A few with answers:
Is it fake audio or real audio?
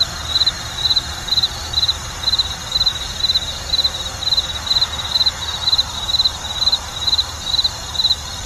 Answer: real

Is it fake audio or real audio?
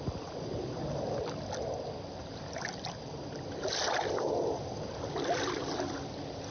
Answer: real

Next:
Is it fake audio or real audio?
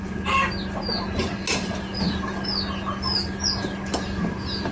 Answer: real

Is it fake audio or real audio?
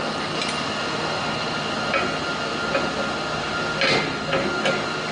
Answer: real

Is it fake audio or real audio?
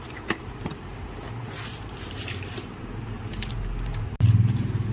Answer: fake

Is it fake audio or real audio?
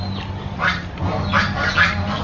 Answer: real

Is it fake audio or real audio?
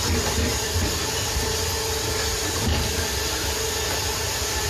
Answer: real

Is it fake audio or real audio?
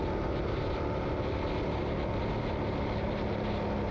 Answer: real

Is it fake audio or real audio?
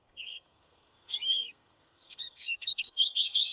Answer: fake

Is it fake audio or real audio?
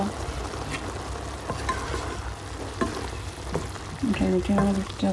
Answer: real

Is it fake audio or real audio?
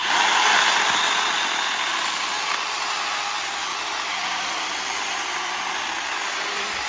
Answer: real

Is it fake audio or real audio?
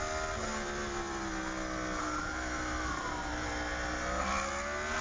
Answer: real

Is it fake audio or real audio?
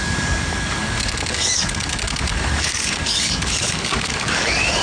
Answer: fake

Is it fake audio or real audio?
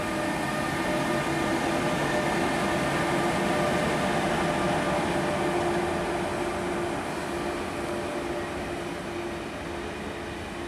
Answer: real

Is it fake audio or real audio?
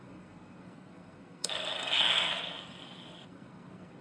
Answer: fake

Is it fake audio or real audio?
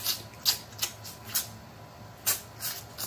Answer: real